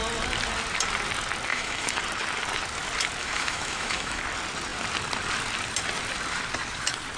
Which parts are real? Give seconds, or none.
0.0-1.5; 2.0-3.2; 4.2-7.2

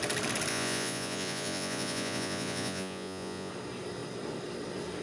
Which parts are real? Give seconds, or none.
0.0-0.5; 3.5-5.0

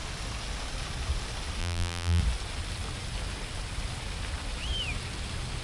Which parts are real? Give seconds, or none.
0.0-1.6; 2.2-5.6

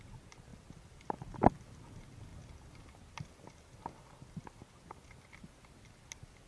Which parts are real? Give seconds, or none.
0.0-6.5

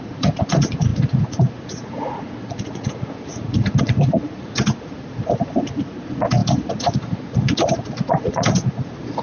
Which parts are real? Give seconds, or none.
none

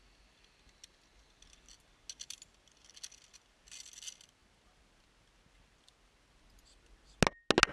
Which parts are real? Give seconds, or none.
0.0-7.7

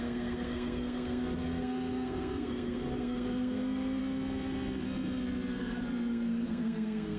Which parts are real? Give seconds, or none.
4.0-5.5